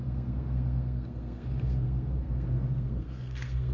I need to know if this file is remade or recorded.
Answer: remade